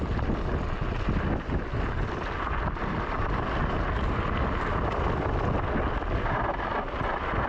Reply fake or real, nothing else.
real